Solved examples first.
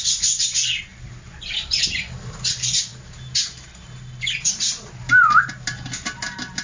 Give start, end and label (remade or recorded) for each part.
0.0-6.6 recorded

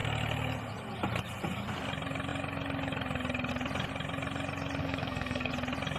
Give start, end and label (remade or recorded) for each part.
0.0-4.8 recorded; 4.8-5.5 remade; 5.5-6.0 recorded

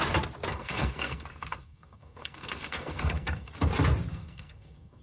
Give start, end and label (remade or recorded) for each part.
0.0-0.5 recorded; 0.5-3.5 remade; 3.5-4.1 recorded; 4.1-5.0 remade

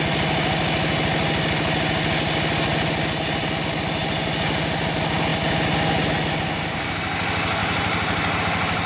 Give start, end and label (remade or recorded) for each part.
0.0-7.6 recorded; 7.6-8.4 remade; 8.4-8.9 recorded

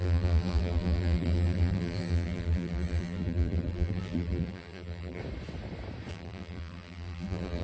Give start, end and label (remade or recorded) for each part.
0.0-5.2 remade; 5.2-6.1 recorded; 6.1-7.6 remade

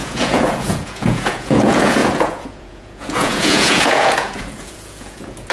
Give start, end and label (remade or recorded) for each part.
0.0-5.5 remade

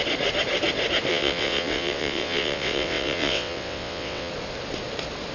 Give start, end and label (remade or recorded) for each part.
0.0-1.1 recorded; 1.1-4.3 remade; 4.3-5.3 recorded